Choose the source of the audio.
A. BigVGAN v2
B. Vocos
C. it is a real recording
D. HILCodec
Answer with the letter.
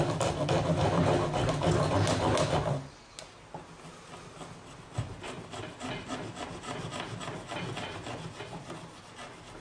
C